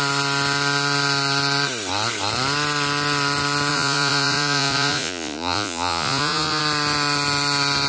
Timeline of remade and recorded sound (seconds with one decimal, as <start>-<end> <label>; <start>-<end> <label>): 0.0-3.7 recorded; 3.7-6.6 remade; 6.6-7.9 recorded